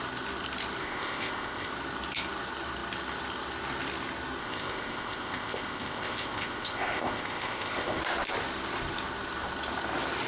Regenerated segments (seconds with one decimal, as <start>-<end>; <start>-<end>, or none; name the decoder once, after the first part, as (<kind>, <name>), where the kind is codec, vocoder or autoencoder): 0.8-1.7 (codec, ZipCodec); 4.4-8.0